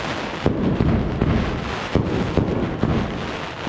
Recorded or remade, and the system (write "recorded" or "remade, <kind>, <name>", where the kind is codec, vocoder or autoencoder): recorded